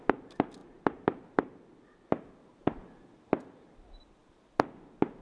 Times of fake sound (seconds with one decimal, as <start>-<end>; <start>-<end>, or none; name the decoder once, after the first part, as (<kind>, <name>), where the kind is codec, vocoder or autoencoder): none